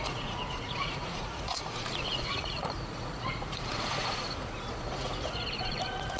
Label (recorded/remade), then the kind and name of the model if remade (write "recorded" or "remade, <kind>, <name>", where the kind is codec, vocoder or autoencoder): remade, vocoder, Vocos